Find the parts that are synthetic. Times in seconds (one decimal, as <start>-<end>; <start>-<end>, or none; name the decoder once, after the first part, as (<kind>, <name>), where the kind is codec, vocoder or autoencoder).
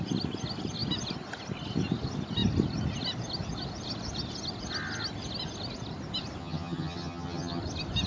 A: 6.4-7.6 (vocoder, HiFi-GAN)